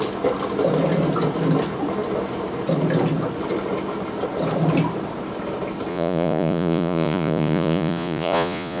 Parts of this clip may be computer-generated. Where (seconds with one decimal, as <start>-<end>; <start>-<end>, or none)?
5.9-8.8